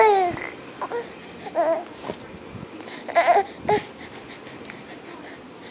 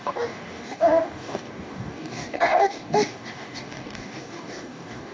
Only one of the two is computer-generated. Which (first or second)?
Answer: second